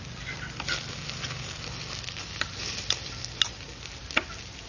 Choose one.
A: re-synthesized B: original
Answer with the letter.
B